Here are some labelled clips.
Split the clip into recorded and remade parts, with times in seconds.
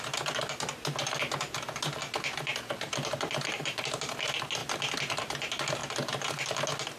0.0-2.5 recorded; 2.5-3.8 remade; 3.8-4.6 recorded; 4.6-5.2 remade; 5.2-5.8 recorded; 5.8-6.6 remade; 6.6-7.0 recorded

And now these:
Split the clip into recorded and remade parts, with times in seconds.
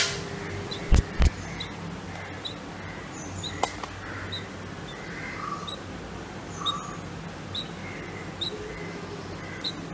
0.0-9.9 recorded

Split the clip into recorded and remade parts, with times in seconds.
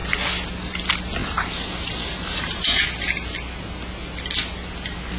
0.0-1.2 recorded; 1.2-2.8 remade; 2.8-5.2 recorded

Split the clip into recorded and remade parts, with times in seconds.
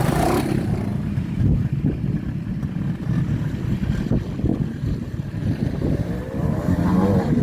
0.0-0.9 recorded; 0.9-2.0 remade; 2.0-4.5 recorded; 4.5-6.1 remade; 6.1-7.4 recorded